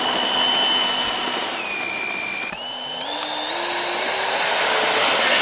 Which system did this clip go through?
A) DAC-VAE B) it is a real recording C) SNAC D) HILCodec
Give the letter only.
B